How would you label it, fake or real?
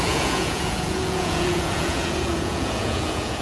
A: fake